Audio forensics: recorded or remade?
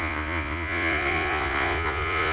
remade